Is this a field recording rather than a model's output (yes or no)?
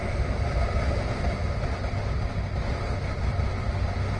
yes